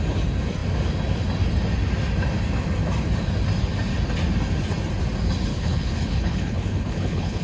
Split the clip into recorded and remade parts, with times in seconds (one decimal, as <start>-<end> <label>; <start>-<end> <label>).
0.0-5.5 recorded; 5.5-7.4 remade